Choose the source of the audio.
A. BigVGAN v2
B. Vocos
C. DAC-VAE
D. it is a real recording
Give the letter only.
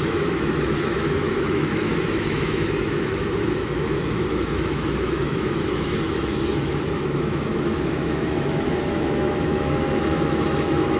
C